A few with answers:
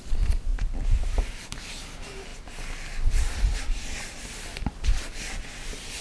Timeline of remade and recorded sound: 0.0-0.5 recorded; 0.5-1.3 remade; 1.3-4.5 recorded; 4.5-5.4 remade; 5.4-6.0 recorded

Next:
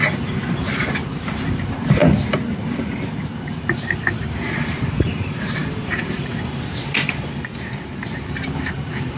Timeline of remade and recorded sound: 0.0-2.0 remade; 2.0-2.6 recorded; 2.6-9.2 remade

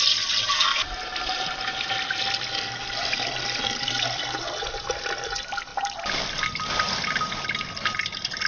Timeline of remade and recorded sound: 0.0-0.7 recorded; 0.7-4.2 remade; 4.2-5.7 recorded; 5.7-6.7 remade; 6.7-8.5 recorded

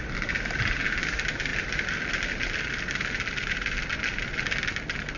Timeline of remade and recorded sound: 0.0-5.2 recorded